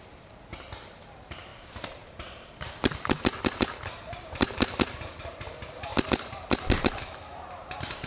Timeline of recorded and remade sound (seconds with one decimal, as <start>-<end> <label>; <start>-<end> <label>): 0.0-8.1 remade